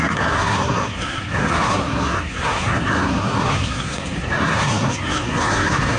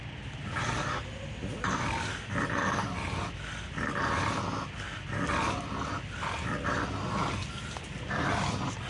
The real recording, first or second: second